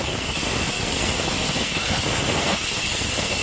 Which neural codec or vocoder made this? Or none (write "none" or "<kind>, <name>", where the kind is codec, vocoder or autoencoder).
codec, SNAC